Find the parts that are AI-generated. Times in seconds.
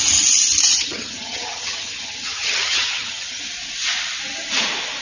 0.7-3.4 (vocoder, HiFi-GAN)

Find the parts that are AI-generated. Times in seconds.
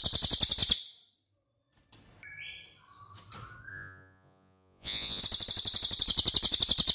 3.7-5.2 (vocoder, Vocos)